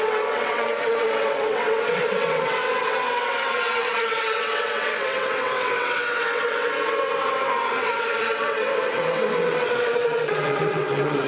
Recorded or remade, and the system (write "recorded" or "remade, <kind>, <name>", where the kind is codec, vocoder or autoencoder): remade, vocoder, WaveNeXt